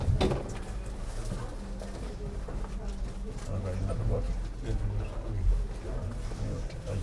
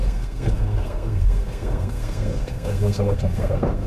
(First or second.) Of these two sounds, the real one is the first